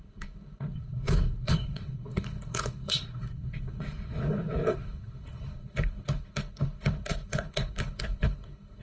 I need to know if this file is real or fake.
fake